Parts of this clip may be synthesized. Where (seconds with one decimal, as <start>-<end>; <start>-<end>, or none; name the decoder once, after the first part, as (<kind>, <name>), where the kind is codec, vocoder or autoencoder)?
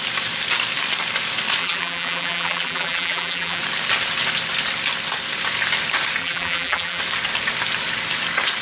1.6-3.6 (vocoder, BigVGAN v2); 6.2-7.0